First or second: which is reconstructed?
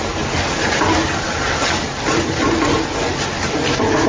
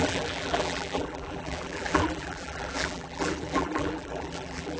second